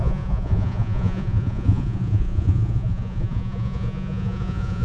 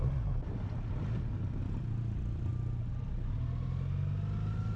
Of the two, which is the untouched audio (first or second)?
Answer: second